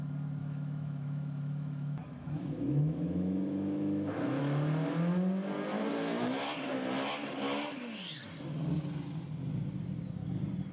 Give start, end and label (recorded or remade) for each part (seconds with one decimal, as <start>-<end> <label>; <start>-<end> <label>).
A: 0.0-0.4 recorded; 0.4-4.4 remade; 4.4-10.7 recorded